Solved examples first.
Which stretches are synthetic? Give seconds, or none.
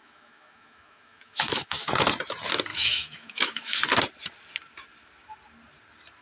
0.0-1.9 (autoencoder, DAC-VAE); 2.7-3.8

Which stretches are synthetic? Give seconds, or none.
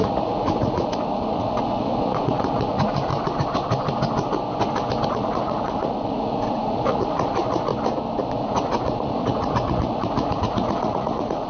0.0-3.1 (vocoder, Vocos); 5.1-7.7; 8.3-11.5